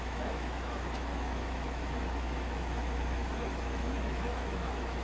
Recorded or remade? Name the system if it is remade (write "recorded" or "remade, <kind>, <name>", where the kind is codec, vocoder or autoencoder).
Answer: remade, autoencoder, DAC-VAE